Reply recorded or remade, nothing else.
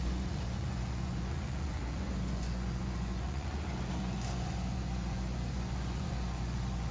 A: remade